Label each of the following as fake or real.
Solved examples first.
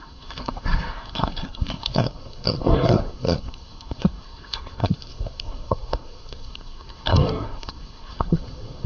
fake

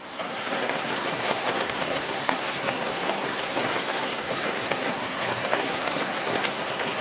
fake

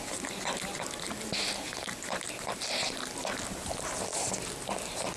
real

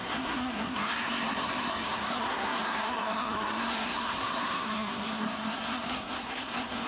fake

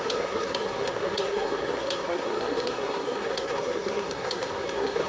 fake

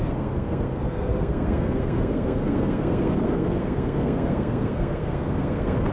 fake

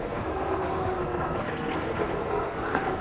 fake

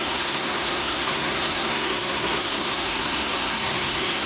fake